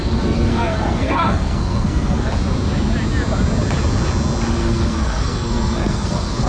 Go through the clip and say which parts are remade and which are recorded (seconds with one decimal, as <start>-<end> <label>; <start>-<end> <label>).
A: 0.0-2.3 remade; 2.3-4.5 recorded; 4.5-6.5 remade